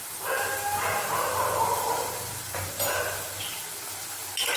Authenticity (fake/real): real